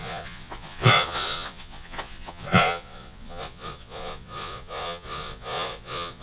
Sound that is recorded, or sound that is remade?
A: remade